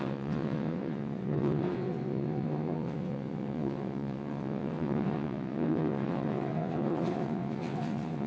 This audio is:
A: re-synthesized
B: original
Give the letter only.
A